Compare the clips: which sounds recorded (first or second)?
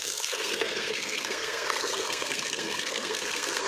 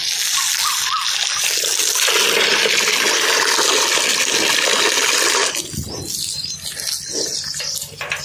second